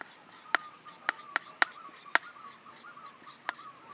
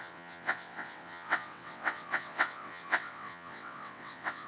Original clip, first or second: first